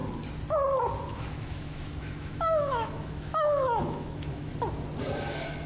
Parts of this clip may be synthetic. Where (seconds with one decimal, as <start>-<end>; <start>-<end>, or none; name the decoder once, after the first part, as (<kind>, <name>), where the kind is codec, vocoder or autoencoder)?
1.1-4.5 (autoencoder, DAC-VAE)